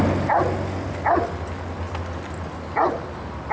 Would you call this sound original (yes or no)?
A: yes